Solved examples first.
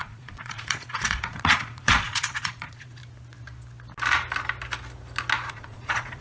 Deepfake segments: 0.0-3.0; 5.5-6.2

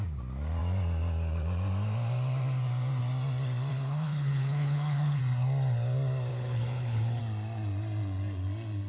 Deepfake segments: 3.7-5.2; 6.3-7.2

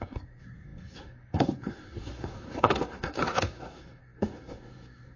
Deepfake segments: 0.0-5.2

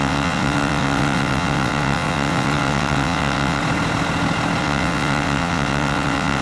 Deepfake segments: 0.0-3.6; 4.6-6.4

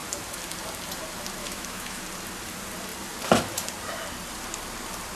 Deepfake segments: 1.4-2.0

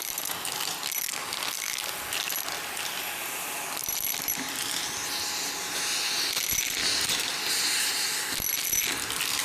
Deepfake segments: none